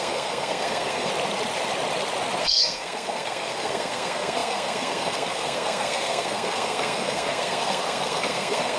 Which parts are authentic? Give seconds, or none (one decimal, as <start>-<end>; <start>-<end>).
1.1-2.4